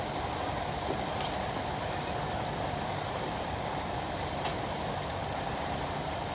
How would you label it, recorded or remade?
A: recorded